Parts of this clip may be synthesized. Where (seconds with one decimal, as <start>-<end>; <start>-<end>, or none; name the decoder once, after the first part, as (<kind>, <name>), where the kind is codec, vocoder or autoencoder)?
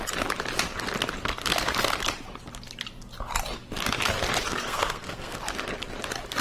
4.5-5.4 (codec, SNAC)